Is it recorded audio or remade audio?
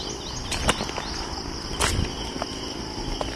recorded